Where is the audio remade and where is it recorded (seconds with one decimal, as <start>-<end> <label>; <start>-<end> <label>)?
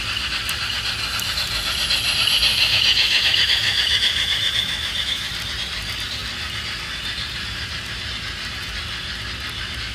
0.0-2.5 recorded; 2.5-5.3 remade; 5.3-9.9 recorded